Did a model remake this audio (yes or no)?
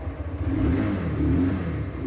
no